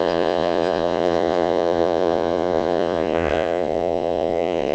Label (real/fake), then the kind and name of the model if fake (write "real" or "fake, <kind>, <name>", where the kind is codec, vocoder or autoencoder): fake, vocoder, Vocos